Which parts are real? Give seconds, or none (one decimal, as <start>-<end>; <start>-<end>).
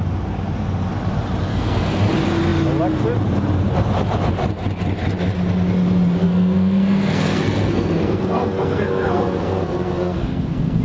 0.0-1.5; 2.0-6.2